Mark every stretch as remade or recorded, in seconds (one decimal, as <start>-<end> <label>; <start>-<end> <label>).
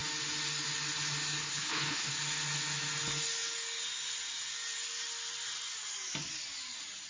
0.0-1.4 recorded; 1.4-2.1 remade; 2.1-7.1 recorded